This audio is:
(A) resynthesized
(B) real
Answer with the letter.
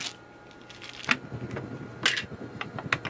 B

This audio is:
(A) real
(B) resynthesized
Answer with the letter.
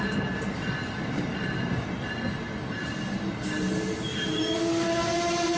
A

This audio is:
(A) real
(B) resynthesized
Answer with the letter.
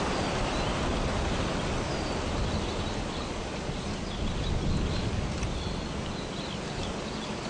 A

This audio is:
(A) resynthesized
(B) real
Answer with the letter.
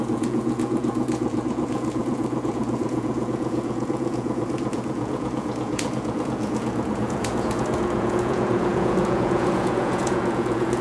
A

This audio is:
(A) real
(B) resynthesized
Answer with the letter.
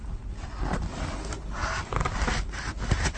A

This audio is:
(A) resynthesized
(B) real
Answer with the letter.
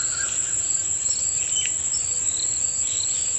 B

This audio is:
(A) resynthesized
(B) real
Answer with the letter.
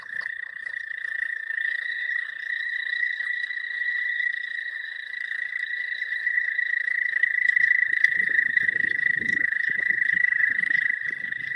A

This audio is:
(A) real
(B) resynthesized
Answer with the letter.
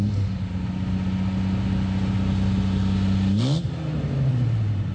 A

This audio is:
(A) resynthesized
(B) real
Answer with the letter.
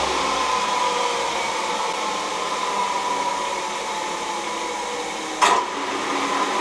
B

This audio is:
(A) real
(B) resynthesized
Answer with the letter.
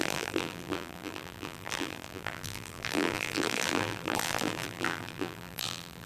B